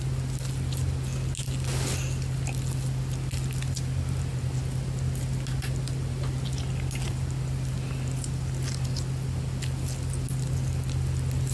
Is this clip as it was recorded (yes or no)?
yes